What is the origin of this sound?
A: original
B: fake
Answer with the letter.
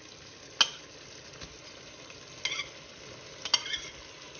A